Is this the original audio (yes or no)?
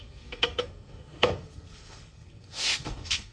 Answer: no